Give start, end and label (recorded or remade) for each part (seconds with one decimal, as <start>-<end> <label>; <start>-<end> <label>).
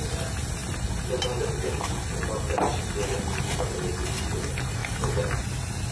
0.0-5.9 recorded